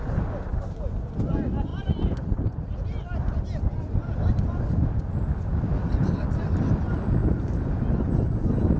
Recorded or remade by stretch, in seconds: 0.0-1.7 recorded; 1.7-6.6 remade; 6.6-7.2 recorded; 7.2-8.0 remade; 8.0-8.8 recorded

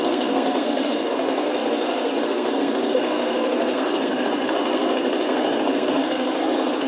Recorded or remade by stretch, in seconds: 0.0-6.9 remade

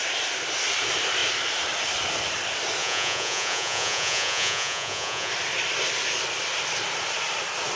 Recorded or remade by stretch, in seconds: 0.0-2.8 recorded; 2.8-5.3 remade; 5.3-7.8 recorded